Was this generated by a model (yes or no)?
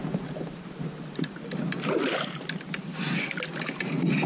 no